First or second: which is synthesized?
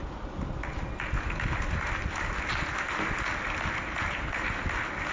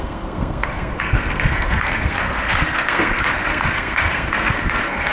second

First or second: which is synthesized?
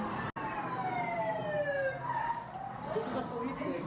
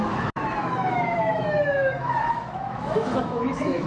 second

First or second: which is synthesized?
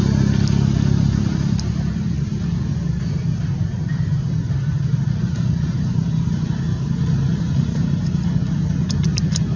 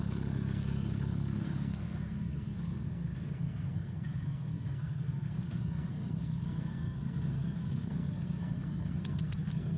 second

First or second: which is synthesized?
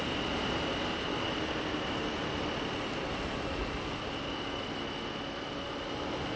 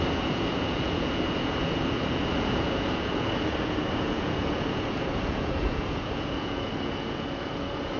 second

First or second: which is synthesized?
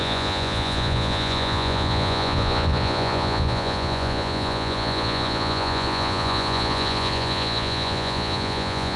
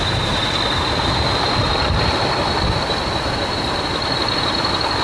first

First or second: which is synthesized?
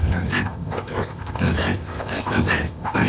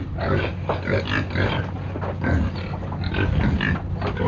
first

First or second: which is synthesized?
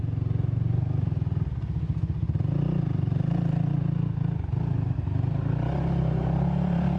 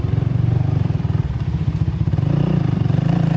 second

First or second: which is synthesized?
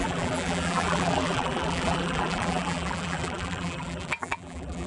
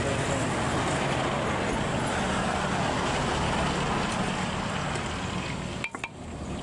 first